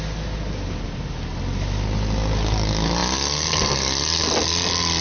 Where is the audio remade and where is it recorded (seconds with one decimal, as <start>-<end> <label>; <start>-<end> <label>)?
0.0-5.0 recorded